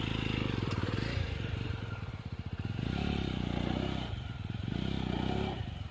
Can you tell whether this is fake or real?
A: fake